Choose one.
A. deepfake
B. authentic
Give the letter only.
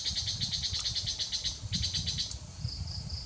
B